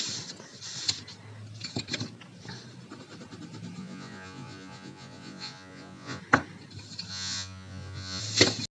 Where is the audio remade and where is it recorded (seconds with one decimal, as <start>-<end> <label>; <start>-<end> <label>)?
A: 0.0-3.8 recorded; 3.8-6.2 remade; 6.2-7.1 recorded; 7.1-8.2 remade; 8.2-8.7 recorded